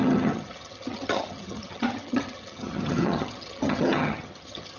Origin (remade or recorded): remade